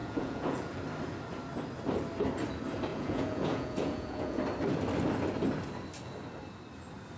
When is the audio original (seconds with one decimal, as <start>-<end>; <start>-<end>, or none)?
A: 0.8-2.9; 4.4-7.2